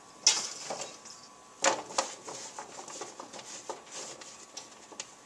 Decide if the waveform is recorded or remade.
recorded